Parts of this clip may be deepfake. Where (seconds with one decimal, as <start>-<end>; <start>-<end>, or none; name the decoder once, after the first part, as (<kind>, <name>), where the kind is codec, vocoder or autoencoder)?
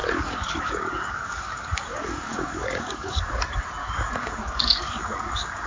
0.0-3.4 (codec, DAC); 3.8-5.7